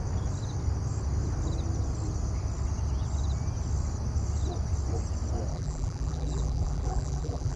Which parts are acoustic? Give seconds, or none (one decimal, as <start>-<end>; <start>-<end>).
0.0-5.5